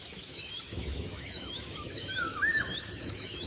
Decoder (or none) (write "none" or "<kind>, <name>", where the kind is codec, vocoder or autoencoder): autoencoder, DAC-VAE